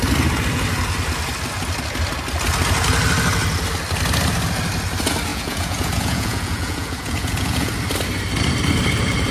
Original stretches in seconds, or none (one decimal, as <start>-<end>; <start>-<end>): 0.0-5.3; 7.7-9.3

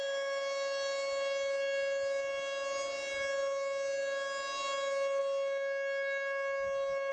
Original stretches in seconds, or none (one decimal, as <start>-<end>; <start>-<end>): 0.0-7.1

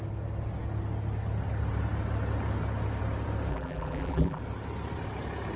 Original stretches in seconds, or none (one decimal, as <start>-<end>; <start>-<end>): 0.0-3.5; 4.4-5.6